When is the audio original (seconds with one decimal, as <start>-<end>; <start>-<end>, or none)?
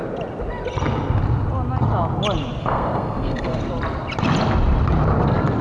0.0-2.6; 3.6-5.6